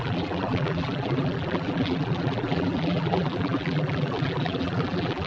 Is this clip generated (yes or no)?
yes